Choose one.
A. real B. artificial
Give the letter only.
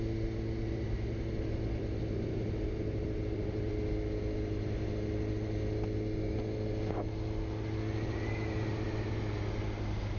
A